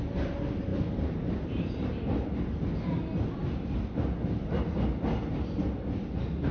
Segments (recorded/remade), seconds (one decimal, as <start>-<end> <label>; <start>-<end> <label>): 0.0-6.5 recorded